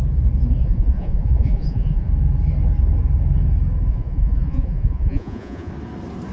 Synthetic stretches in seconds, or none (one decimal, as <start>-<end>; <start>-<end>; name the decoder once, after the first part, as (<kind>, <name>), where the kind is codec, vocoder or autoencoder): 0.6-2.1 (vocoder, Vocos); 3.9-5.7